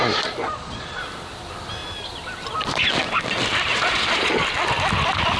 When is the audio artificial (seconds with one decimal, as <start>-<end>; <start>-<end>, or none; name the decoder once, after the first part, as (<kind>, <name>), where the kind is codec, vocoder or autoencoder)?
0.4-1.0 (vocoder, Vocos); 3.7-4.3